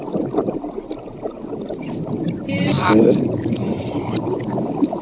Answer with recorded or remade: recorded